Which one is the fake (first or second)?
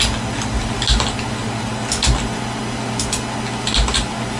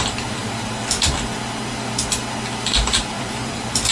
second